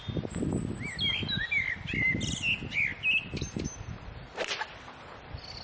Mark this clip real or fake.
real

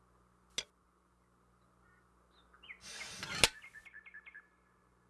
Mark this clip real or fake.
real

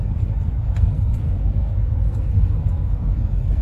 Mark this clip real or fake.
fake